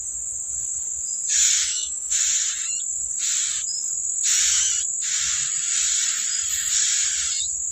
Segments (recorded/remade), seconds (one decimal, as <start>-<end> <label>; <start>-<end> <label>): 0.0-1.6 recorded; 1.6-2.2 remade; 2.2-7.7 recorded